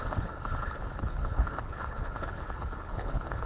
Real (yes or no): no